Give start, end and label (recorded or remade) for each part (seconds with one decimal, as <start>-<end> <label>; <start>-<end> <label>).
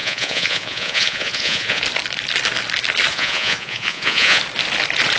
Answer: 0.0-1.8 remade; 1.8-3.1 recorded; 3.1-4.4 remade; 4.4-5.2 recorded